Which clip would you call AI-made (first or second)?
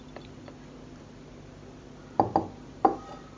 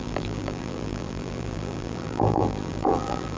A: second